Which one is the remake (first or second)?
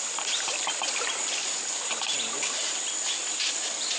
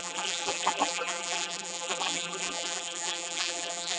second